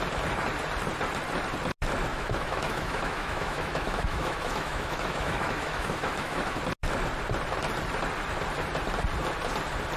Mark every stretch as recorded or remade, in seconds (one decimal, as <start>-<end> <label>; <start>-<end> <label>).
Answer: 0.0-2.1 recorded; 2.1-6.6 remade; 6.6-10.0 recorded